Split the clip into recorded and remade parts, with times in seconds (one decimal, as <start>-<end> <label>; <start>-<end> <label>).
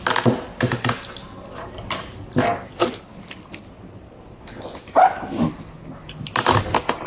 0.0-7.1 recorded